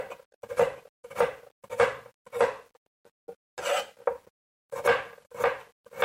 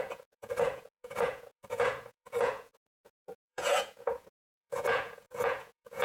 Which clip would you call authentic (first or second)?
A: first